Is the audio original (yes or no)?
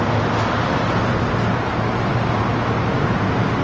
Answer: yes